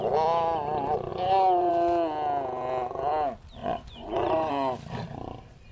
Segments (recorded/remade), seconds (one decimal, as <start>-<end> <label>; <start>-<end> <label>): 0.0-1.1 recorded; 1.1-1.7 remade; 1.7-3.6 recorded; 3.6-4.5 remade; 4.5-5.7 recorded